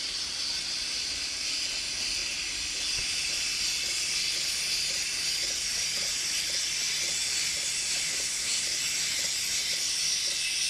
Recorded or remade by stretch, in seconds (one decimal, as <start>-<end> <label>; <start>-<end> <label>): 0.0-8.1 recorded; 8.1-8.8 remade; 8.8-10.7 recorded